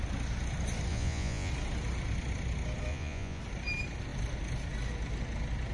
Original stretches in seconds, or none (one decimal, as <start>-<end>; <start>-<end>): 0.0-0.9; 1.5-2.9; 3.4-5.7